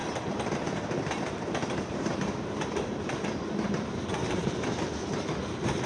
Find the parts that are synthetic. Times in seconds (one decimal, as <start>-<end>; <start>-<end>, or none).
0.0-3.5; 4.2-4.9